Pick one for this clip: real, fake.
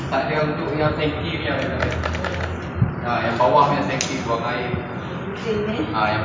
real